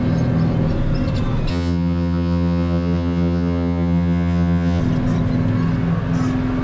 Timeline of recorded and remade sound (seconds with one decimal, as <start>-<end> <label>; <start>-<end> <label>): 0.0-1.5 recorded; 1.5-4.8 remade; 4.8-6.6 recorded